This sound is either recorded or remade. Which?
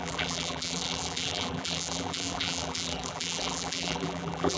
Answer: remade